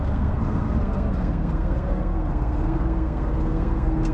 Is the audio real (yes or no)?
no